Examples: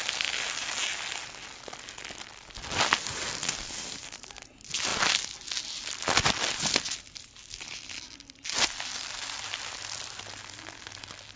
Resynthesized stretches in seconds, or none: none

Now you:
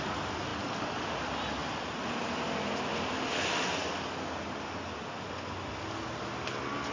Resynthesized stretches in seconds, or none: none

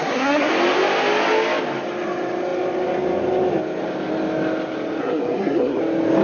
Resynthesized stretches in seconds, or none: 0.0-0.5 (codec, SNAC); 5.0-5.8

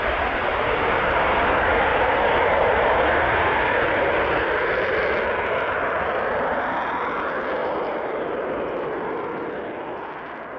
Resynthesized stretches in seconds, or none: 0.5-1.1 (vocoder, BigVGAN v2); 1.9-4.0; 7.6-9.5